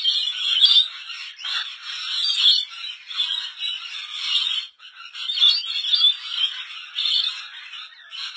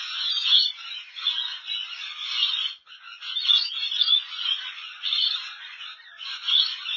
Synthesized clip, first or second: second